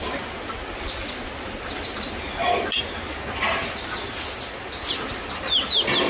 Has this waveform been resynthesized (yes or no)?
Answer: no